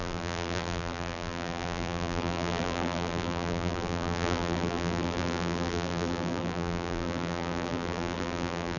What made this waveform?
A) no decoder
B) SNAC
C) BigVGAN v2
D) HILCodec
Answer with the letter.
C